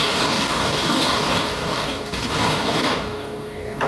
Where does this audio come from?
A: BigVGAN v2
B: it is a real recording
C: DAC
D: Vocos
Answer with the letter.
C